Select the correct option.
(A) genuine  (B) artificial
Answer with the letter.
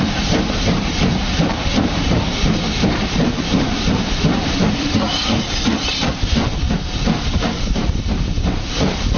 B